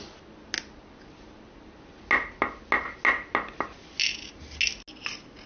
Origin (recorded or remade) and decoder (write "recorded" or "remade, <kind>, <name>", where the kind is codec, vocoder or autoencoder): recorded